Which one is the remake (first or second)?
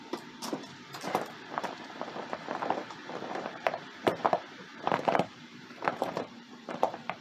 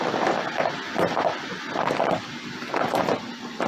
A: first